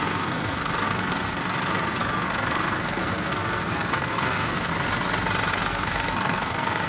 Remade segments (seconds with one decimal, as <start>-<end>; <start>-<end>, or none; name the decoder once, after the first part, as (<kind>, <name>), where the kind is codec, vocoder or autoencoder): 0.0-4.7 (codec, SNAC); 5.5-6.9